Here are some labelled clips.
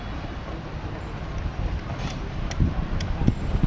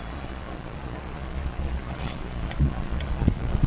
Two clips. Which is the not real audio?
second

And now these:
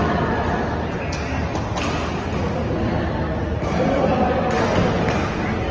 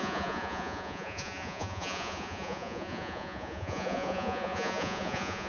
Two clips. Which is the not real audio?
second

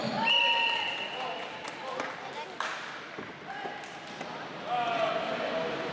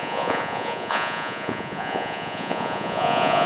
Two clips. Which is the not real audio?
second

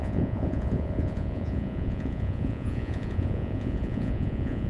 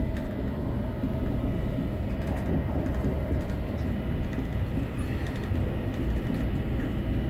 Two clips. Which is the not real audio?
first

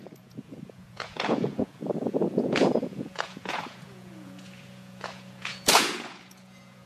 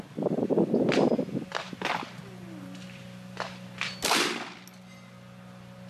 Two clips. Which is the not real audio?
first